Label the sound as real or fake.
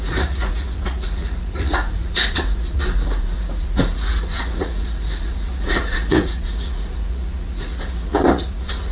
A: fake